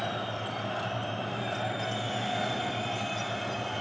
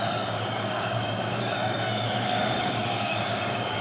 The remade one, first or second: second